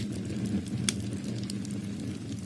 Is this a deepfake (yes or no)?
no